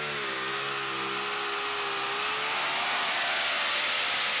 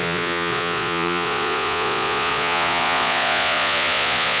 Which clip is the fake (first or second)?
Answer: second